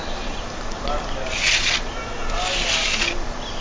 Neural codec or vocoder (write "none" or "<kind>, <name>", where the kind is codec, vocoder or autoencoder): none